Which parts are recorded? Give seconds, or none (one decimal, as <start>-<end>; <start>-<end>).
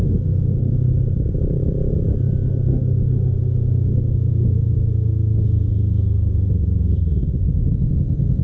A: 0.6-2.7; 7.7-8.4